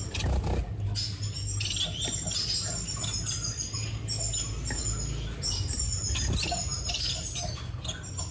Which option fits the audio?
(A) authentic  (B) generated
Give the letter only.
A